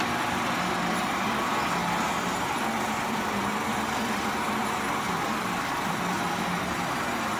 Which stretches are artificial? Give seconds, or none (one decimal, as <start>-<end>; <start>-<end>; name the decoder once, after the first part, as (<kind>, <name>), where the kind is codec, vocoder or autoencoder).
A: 1.8-6.2 (vocoder, BigVGAN v2)